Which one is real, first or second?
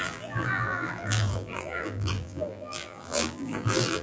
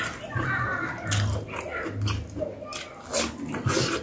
second